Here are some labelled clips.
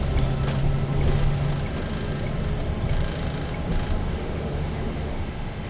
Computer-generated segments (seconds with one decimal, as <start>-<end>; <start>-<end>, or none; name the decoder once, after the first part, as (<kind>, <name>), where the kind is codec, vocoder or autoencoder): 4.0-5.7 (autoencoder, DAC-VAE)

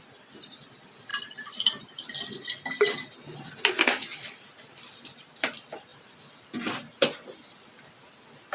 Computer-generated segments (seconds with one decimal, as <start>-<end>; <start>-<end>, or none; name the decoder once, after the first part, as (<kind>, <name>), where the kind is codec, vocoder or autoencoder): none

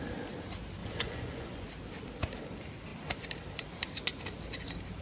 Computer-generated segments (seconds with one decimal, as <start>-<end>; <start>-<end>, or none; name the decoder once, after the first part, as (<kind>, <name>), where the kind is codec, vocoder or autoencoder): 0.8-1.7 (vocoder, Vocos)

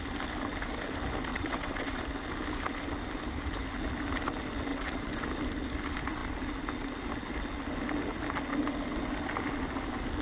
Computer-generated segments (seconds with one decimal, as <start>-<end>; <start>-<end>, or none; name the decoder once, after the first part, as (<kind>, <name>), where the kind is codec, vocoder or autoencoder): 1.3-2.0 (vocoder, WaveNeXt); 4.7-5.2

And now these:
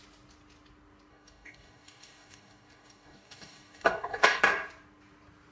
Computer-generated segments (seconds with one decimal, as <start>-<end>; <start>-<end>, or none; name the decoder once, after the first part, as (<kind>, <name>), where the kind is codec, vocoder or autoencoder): 1.1-4.4 (codec, DAC)